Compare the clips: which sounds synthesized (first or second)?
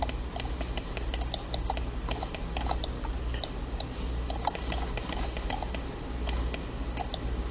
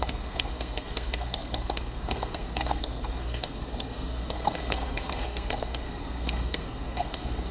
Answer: second